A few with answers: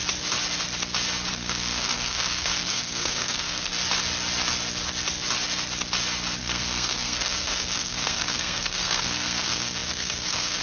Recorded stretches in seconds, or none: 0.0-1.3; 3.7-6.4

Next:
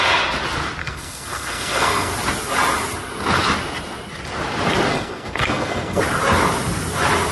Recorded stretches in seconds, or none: 0.0-0.8; 2.1-4.9; 6.0-7.3

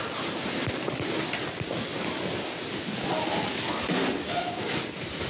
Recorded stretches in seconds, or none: 0.0-5.3

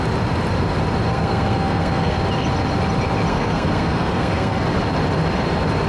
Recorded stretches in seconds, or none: 0.0-1.1; 2.2-3.3; 4.6-5.9